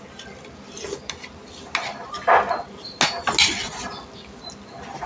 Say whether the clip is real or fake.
real